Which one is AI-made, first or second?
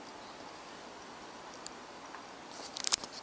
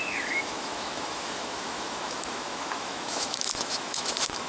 second